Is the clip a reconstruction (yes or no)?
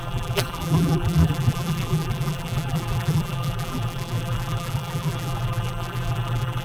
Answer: yes